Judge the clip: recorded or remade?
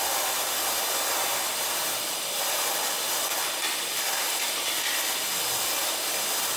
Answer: recorded